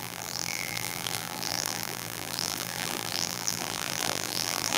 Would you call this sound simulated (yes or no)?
yes